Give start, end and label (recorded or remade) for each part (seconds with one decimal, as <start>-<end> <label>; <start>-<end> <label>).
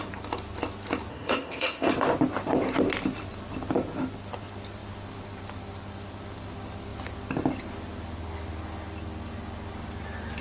0.0-1.1 recorded; 1.1-1.9 remade; 1.9-10.4 recorded